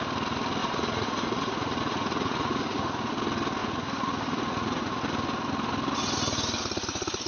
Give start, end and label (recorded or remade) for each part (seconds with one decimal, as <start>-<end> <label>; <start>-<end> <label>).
0.0-0.6 recorded; 0.6-3.1 remade; 3.1-3.6 recorded; 3.6-5.0 remade; 5.0-7.3 recorded